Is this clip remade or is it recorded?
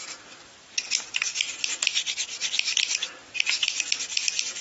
remade